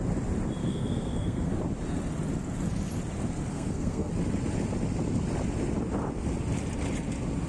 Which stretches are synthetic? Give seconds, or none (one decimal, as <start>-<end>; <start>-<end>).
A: 0.6-1.5; 3.5-4.1